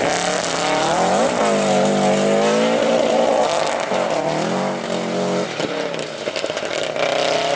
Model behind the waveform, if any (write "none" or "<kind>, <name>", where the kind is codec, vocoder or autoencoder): none